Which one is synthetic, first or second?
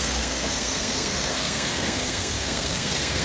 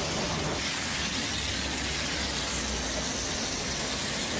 first